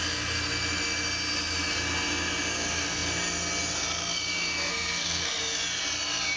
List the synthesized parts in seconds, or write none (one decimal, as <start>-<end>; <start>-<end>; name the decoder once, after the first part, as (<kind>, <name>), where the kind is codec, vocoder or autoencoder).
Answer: 4.7-5.4 (codec, SNAC)